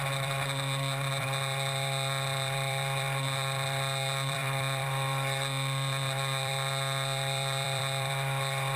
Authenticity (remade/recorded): remade